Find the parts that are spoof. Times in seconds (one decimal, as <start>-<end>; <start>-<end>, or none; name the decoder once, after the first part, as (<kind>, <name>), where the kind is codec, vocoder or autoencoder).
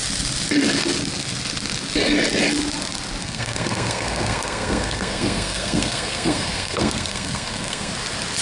3.2-7.9 (codec, SNAC)